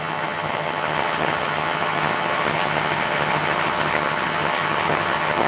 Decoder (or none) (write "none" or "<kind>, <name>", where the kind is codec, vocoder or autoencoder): vocoder, HiFi-GAN